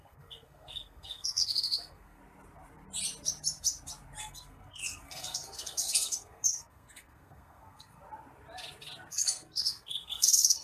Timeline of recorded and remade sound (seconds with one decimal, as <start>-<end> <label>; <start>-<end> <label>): 0.0-2.2 remade; 2.2-4.2 recorded; 4.2-8.0 remade; 8.0-9.1 recorded; 9.1-10.6 remade